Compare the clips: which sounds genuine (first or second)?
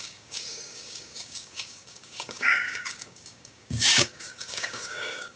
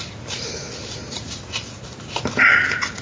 second